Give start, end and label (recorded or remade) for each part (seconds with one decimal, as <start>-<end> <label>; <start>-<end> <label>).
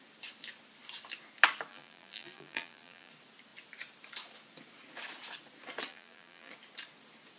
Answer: 0.0-1.7 recorded; 1.7-3.1 remade; 3.1-5.9 recorded; 5.9-6.5 remade; 6.5-7.4 recorded